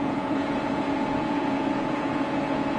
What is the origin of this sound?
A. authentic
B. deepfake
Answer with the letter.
B